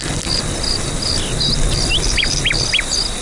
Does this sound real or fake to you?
real